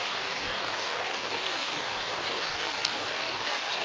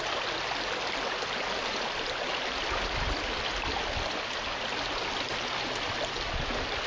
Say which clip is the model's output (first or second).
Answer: first